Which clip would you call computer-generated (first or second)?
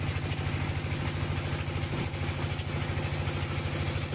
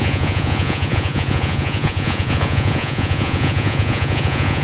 second